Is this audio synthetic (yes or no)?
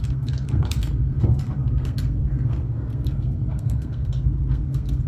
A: yes